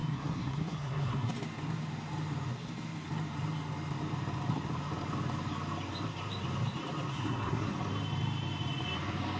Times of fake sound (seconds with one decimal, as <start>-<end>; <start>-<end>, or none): 0.0-1.3; 7.1-7.7